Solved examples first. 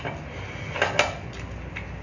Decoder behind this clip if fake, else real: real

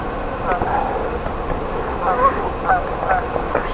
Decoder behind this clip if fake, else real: real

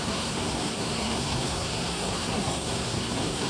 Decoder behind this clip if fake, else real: fake, codec, SNAC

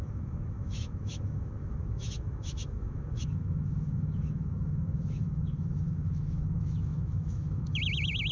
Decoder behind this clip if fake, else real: fake, autoencoder, DAC-VAE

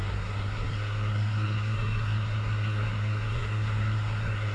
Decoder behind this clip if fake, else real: fake, codec, SNAC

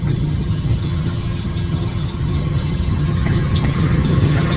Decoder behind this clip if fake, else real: fake, vocoder, HiFi-GAN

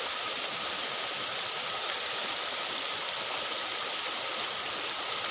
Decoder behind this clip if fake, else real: real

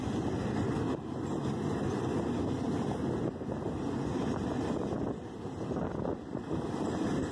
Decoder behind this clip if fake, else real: real